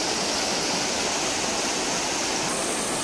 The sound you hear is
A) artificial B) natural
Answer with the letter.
B